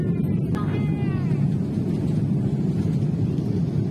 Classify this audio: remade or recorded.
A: recorded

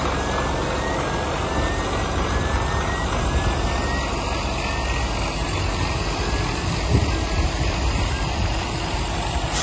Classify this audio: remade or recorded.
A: recorded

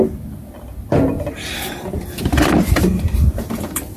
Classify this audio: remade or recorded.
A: remade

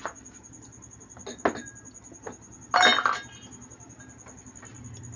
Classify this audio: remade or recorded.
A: recorded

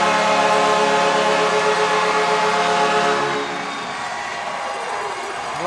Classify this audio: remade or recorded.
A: recorded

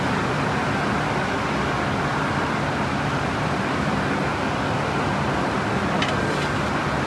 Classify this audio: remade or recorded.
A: recorded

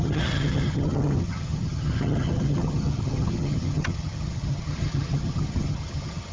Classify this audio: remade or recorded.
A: remade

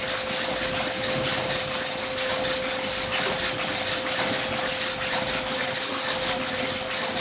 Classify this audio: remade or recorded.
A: recorded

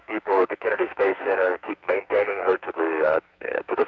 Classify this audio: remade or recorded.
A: remade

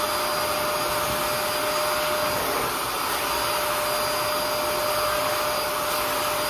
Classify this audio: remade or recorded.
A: recorded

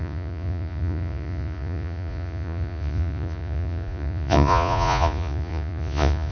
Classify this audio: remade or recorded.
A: remade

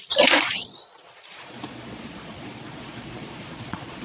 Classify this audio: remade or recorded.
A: remade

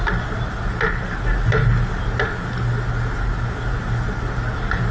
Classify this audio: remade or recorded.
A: recorded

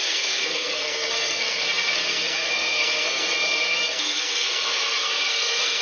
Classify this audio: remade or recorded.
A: remade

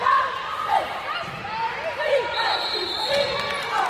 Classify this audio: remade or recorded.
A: recorded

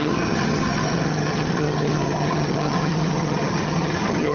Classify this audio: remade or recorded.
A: remade